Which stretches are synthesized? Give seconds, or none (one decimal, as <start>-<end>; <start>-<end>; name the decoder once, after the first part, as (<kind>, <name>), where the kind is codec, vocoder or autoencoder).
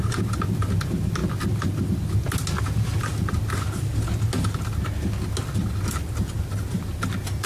none